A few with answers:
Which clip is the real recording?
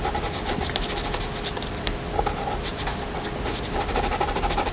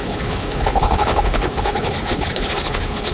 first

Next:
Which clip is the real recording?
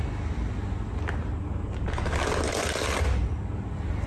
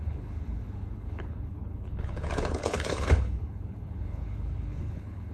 first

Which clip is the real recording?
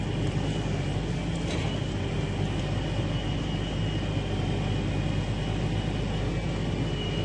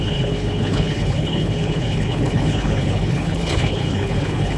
first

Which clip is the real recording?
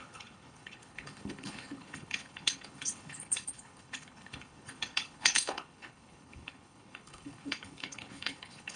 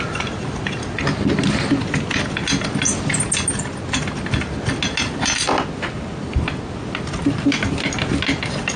second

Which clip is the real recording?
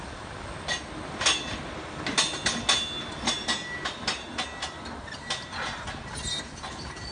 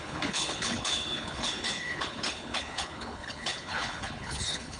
first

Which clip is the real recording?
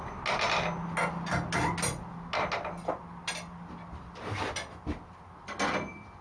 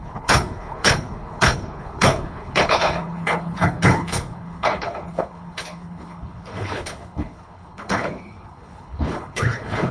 first